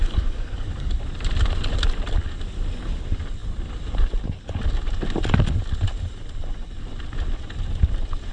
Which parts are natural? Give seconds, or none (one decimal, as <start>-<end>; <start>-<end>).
0.9-8.3